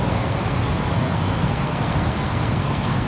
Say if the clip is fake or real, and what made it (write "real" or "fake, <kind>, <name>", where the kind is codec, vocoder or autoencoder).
fake, codec, SNAC